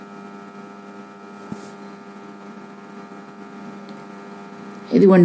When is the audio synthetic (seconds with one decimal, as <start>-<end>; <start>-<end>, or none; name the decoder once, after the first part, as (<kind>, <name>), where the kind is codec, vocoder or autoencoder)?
none

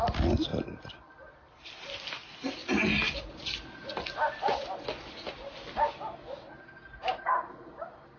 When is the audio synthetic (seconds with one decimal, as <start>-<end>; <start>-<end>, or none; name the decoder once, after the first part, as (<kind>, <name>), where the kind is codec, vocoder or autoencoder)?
0.5-2.0 (vocoder, BigVGAN v2); 2.6-3.3

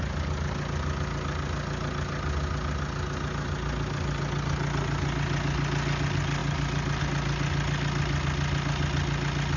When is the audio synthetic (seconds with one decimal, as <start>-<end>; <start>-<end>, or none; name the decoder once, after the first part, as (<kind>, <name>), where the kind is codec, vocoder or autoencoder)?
6.4-7.0 (vocoder, BigVGAN v2)

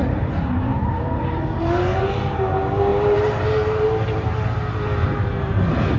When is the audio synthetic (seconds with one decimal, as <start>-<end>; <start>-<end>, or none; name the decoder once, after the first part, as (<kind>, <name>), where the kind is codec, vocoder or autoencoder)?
0.0-6.0 (vocoder, BigVGAN v2)

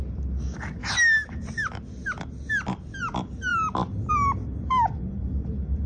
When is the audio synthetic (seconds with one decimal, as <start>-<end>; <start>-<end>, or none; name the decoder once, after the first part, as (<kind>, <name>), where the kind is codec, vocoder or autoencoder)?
none